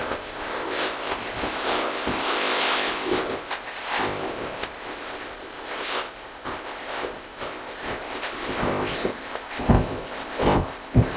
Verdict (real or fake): fake